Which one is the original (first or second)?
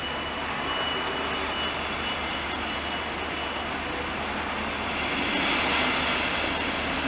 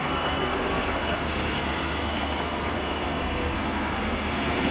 first